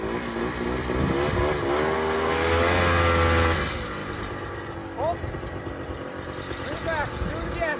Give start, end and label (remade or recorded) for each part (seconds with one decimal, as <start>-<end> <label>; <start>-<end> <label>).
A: 0.0-4.0 recorded; 4.0-4.7 remade; 4.7-7.8 recorded